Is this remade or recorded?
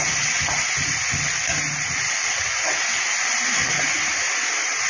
recorded